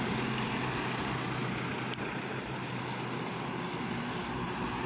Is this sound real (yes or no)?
yes